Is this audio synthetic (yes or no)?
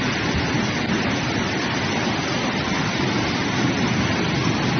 no